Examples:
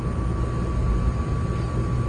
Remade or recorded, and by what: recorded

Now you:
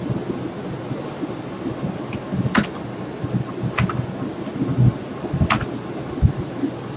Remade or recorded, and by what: recorded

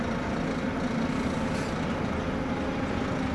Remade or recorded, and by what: recorded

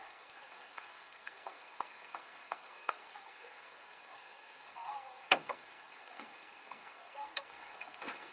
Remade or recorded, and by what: remade, codec, SNAC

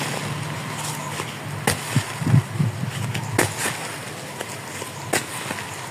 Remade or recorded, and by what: recorded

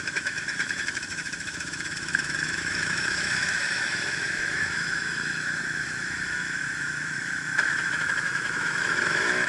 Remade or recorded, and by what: remade, autoencoder, DAC-VAE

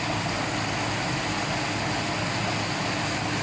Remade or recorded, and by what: recorded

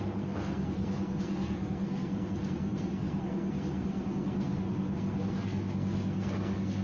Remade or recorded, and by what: remade, codec, SNAC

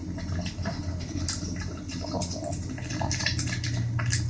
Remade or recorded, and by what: recorded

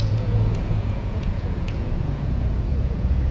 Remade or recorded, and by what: remade, vocoder, Vocos